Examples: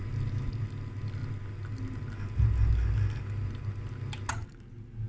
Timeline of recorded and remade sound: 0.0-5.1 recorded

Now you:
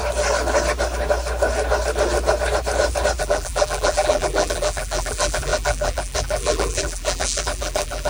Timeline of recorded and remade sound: 0.0-3.2 recorded; 3.2-8.1 remade

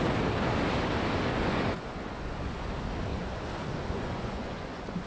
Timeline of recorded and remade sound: 0.0-1.3 recorded; 1.3-2.7 remade; 2.7-3.1 recorded; 3.1-5.1 remade

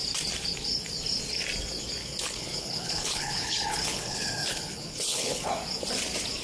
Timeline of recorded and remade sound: 0.0-2.0 recorded; 2.0-5.5 remade; 5.5-6.4 recorded

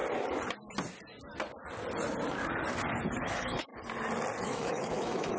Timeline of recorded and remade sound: 0.0-3.2 recorded; 3.2-3.7 remade; 3.7-4.4 recorded; 4.4-5.4 remade